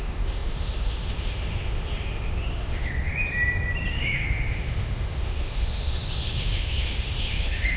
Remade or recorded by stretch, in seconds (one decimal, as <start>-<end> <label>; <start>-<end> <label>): 0.0-3.1 remade; 3.1-3.9 recorded; 3.9-7.8 remade